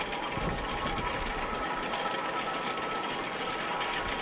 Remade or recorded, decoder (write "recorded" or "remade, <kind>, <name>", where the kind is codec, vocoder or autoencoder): recorded